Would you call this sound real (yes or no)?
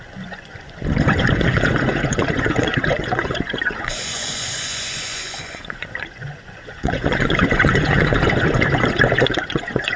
no